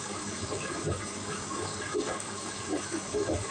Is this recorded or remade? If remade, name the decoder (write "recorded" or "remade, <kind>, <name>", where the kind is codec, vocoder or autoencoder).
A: remade, codec, DAC